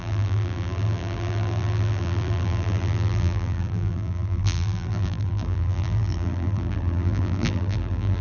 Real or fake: fake